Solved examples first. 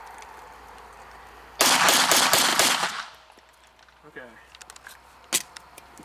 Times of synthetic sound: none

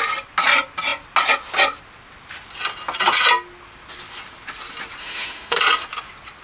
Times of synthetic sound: 5.0-5.6 (autoencoder, DAC-VAE)

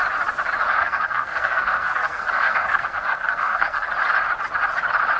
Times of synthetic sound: 0.8-3.9 (codec, SNAC)

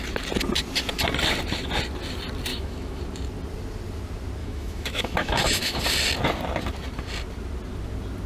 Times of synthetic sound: 2.5-3.0 (autoencoder, DAC-VAE); 4.4-5.8